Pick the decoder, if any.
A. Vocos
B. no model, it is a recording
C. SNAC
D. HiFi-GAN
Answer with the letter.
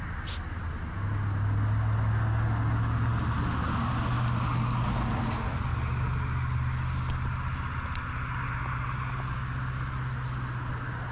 B